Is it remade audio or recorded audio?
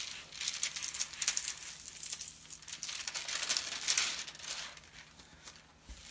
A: recorded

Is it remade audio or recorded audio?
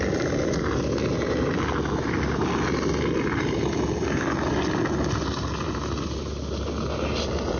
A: recorded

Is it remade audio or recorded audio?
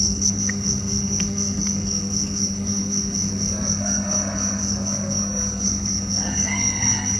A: remade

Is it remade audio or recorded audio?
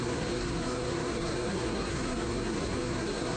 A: remade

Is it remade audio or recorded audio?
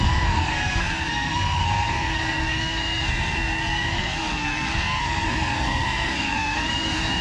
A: remade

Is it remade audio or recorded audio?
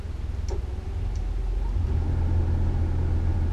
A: recorded